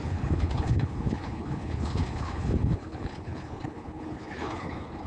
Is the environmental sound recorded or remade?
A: remade